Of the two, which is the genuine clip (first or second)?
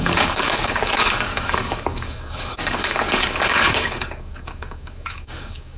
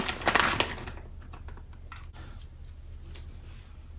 second